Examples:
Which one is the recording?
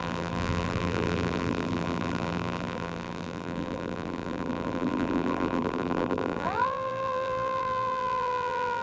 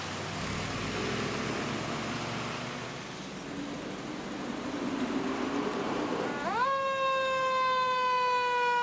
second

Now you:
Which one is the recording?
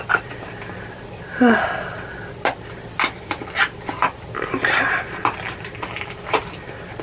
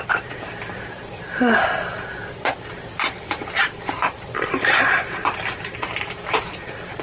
first